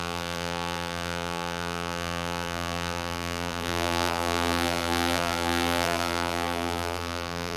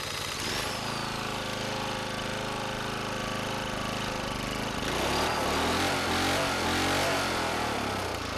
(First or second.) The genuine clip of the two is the second